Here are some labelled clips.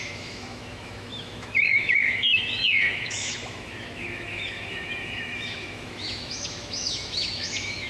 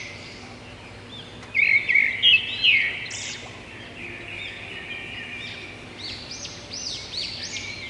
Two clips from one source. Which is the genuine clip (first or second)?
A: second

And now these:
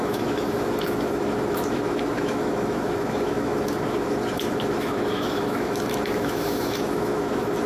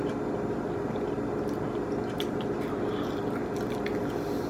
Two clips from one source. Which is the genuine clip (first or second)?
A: second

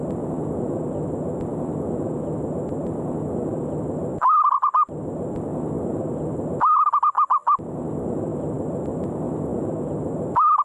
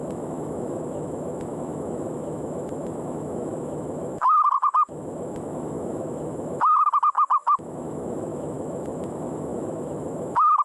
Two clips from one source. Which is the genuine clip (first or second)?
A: first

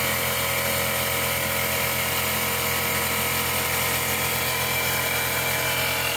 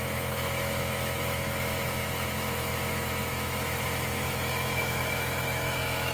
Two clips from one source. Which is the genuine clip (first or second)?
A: first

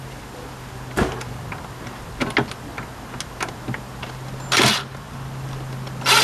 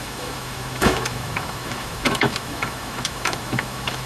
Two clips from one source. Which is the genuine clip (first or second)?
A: first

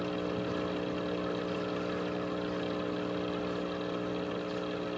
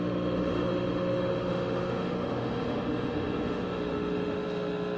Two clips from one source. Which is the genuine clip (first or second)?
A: first